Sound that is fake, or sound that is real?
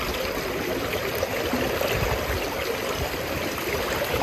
real